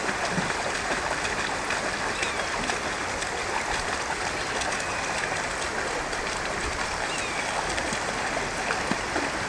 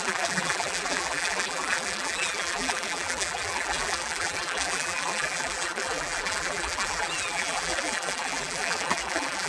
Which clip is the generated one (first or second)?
second